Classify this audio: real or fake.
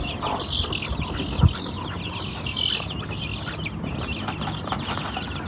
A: real